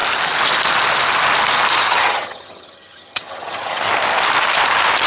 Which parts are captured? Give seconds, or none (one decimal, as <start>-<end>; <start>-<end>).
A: 0.0-1.8; 3.9-5.1